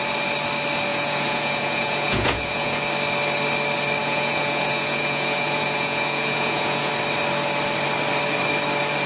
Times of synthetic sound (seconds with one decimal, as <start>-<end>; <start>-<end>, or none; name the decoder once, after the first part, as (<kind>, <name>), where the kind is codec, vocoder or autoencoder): 0.9-2.8 (vocoder, Vocos); 4.0-6.9